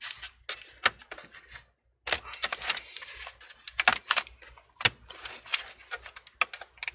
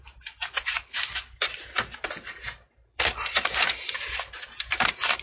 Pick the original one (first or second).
first